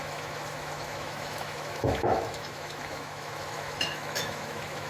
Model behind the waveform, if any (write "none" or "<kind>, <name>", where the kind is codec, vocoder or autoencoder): autoencoder, DAC-VAE